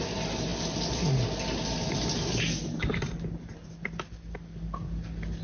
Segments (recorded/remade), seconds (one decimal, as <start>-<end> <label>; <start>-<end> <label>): 0.0-5.4 recorded